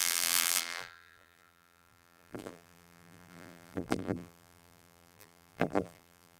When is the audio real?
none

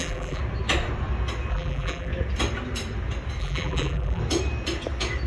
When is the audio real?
0.4-1.5; 2.1-3.4; 4.2-5.3

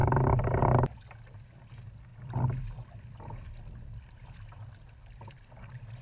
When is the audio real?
0.0-2.1; 5.3-6.0